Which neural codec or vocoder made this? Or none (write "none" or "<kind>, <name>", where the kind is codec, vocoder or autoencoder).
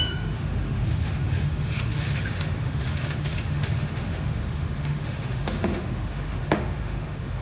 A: autoencoder, DAC-VAE